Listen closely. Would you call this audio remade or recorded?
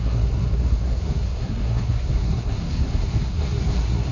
remade